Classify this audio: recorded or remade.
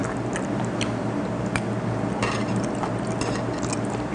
recorded